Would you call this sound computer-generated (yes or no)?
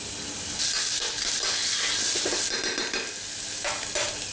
no